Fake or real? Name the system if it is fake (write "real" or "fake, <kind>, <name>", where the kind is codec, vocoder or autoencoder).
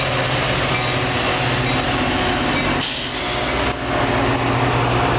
real